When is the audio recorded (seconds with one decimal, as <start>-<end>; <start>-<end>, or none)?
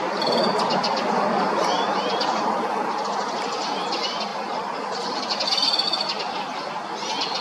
0.0-0.7; 2.4-7.4